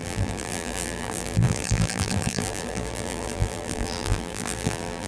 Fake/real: fake